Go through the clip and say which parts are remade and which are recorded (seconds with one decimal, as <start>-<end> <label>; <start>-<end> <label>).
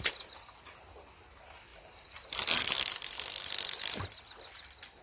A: 0.0-5.0 recorded